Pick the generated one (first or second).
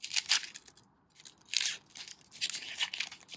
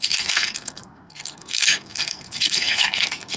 second